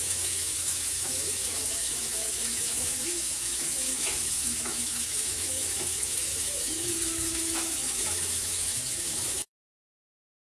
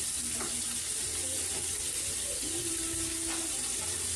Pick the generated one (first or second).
first